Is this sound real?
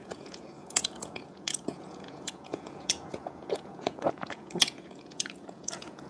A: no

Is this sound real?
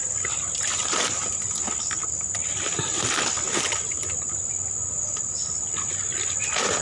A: yes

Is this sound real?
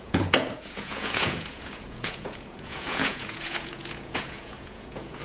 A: no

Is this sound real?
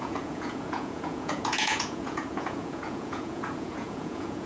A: no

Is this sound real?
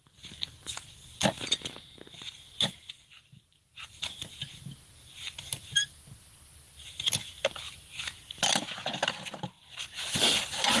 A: yes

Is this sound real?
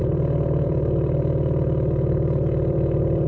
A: no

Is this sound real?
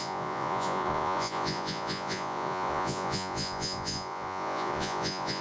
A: no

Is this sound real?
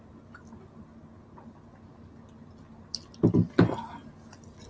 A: yes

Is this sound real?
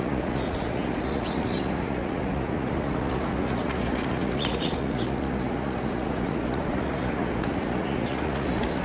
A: no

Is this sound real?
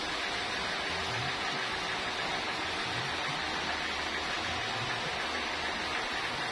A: yes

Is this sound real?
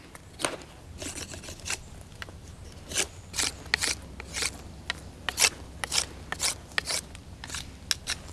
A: yes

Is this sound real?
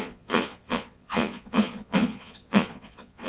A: no